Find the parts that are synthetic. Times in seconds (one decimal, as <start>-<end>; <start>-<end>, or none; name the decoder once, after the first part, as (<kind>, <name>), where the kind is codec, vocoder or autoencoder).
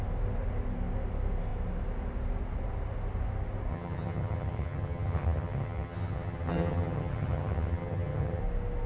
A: 3.7-8.4 (vocoder, HiFi-GAN)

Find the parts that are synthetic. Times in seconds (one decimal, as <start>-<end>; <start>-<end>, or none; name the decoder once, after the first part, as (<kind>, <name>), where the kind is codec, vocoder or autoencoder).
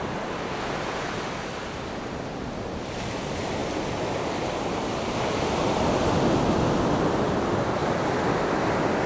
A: none